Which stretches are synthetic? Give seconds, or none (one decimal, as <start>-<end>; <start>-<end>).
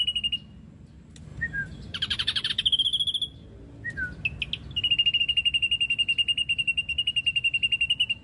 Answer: 1.3-2.5